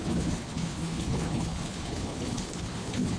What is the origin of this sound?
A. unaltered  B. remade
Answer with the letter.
B